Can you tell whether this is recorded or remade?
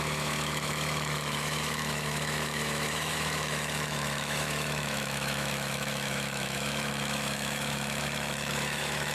remade